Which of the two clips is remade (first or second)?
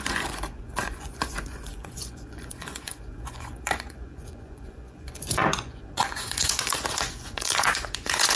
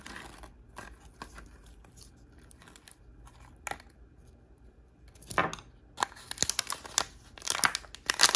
first